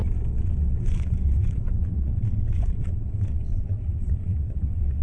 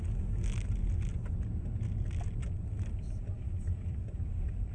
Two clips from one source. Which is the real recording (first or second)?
second